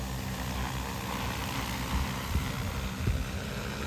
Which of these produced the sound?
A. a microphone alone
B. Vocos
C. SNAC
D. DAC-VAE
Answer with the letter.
A